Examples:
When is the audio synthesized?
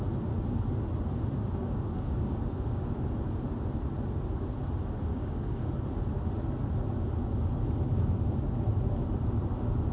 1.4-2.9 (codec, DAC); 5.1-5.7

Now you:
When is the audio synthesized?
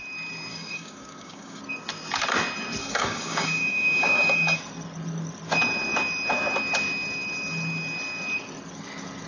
0.5-1.6 (codec, DAC); 2.8-4.6